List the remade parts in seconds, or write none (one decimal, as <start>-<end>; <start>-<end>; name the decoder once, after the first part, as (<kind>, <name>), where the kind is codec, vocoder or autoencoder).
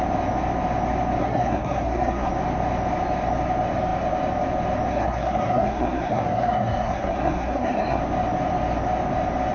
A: 1.2-2.3 (codec, SNAC); 4.9-8.0